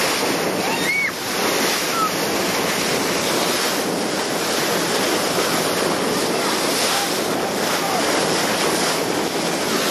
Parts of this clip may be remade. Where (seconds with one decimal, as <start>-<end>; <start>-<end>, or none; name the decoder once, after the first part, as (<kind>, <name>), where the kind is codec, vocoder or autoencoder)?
none